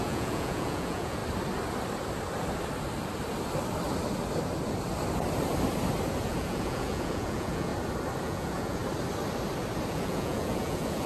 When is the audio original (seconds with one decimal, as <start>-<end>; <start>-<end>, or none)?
1.2-6.2; 7.7-8.2; 8.8-9.9